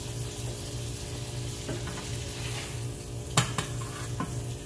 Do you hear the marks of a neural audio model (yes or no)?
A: no